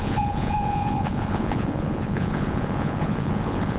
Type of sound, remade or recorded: remade